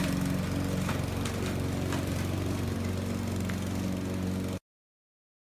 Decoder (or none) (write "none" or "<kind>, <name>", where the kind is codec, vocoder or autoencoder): none